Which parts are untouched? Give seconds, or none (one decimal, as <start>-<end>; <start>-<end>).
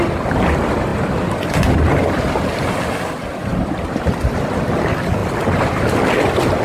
0.0-3.5; 4.6-6.6